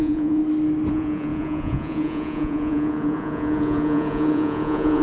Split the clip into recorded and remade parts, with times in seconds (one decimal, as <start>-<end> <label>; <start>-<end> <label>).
0.0-0.4 remade; 0.4-0.9 recorded; 0.9-5.0 remade